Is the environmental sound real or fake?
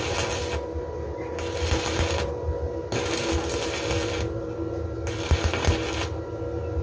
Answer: real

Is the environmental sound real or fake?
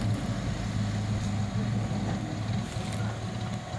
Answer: real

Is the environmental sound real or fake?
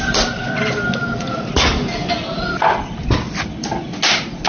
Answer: real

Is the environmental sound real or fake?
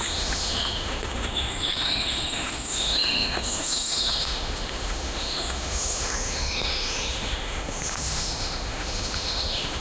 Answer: fake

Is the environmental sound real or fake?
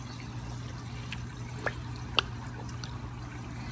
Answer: real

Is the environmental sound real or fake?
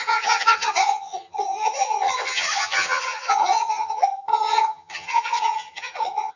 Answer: fake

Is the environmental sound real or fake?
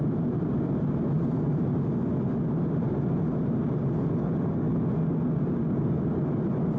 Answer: real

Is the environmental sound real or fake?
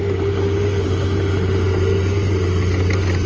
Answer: real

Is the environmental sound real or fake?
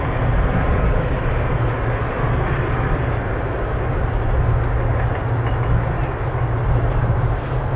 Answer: real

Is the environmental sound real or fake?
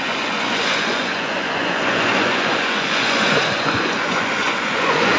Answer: fake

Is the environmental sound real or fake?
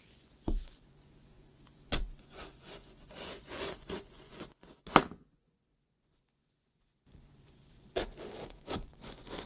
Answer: fake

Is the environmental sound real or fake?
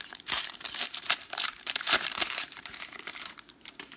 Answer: fake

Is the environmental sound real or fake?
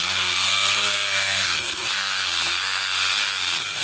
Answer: fake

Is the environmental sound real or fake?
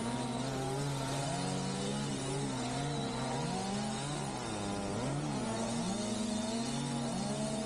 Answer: real